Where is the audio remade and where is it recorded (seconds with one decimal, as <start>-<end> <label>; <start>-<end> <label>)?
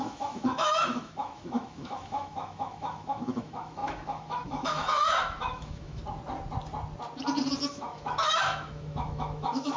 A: 0.0-6.0 remade; 6.0-7.7 recorded; 7.7-9.8 remade